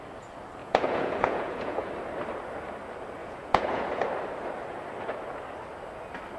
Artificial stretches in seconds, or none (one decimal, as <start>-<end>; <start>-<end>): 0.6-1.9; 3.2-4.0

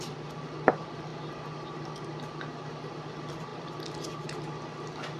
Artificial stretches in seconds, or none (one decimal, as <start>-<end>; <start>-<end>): none

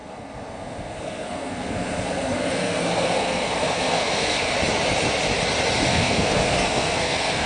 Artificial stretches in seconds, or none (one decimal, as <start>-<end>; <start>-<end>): 0.0-4.5; 5.9-7.5

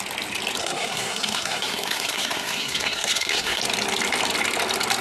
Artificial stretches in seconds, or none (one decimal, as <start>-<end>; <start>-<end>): 0.6-3.6

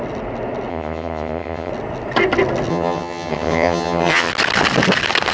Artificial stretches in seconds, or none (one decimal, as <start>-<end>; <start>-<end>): 0.7-1.7; 2.7-4.3